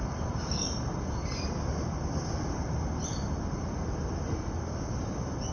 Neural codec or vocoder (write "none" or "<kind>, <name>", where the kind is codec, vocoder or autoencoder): none